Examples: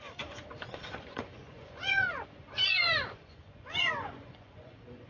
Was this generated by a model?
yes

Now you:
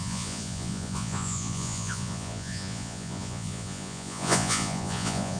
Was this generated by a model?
yes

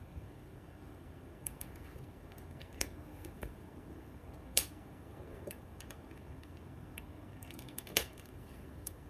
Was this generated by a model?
yes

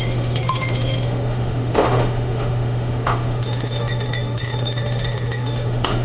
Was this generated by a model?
yes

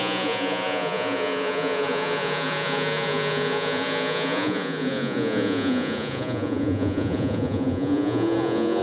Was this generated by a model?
yes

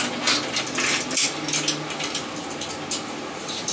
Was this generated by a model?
no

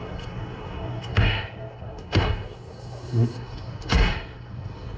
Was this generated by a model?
yes